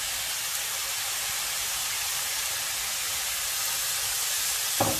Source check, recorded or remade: recorded